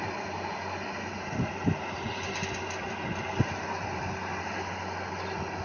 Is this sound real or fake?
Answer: real